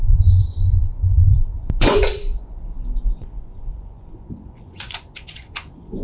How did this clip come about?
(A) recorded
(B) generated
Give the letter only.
B